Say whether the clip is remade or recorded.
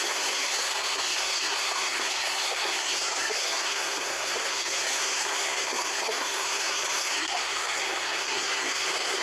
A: remade